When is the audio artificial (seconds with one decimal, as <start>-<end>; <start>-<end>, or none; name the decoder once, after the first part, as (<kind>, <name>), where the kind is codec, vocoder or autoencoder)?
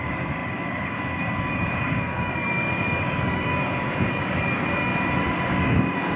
0.0-4.9 (codec, DAC); 5.5-6.2